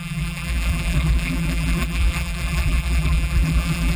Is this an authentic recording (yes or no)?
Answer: no